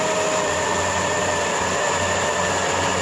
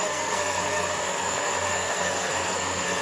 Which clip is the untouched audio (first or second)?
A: first